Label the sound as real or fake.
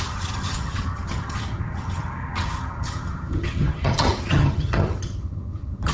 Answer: fake